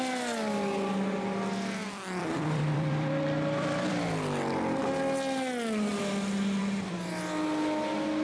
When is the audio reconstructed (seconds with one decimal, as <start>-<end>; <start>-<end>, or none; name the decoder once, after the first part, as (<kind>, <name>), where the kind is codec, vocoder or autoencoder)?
1.8-4.0 (vocoder, BigVGAN v2)